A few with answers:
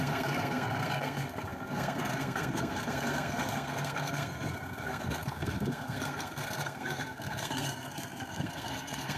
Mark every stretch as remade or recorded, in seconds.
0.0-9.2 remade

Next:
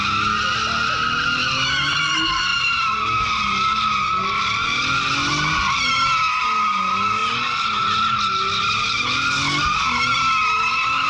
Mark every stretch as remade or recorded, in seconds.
0.0-11.1 recorded

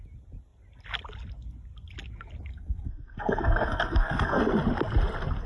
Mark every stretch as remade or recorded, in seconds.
0.0-2.5 recorded; 2.5-4.4 remade; 4.4-5.5 recorded

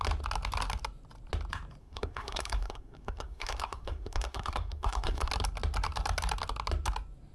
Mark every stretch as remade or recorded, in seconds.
0.0-1.8 recorded; 1.8-5.3 remade; 5.3-7.3 recorded

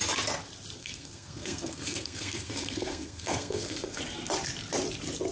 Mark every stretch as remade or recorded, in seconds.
0.0-0.8 recorded; 0.8-4.0 remade; 4.0-5.3 recorded

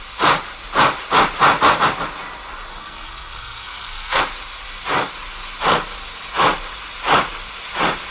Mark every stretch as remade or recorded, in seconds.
0.0-2.7 recorded; 2.7-4.2 remade; 4.2-8.1 recorded

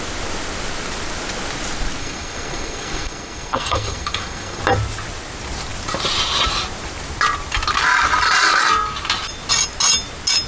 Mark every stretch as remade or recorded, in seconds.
0.0-2.0 recorded; 2.0-4.6 remade; 4.6-10.5 recorded

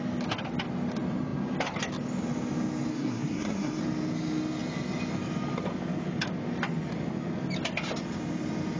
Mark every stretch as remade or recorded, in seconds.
0.0-2.9 recorded; 2.9-3.8 remade; 3.8-8.8 recorded